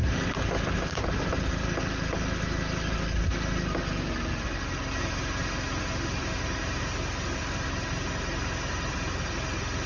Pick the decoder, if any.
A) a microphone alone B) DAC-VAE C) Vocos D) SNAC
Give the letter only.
A